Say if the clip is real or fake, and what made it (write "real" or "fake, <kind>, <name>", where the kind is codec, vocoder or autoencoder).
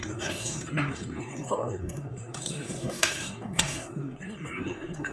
fake, codec, SNAC